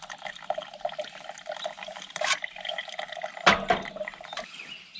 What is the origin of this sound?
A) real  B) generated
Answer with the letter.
A